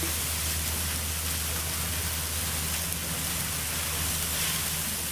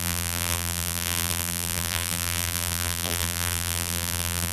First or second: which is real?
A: first